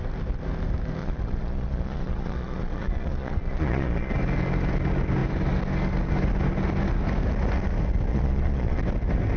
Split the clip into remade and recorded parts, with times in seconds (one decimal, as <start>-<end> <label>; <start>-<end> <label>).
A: 0.0-1.0 recorded; 1.0-4.1 remade; 4.1-8.1 recorded; 8.1-8.8 remade; 8.8-9.4 recorded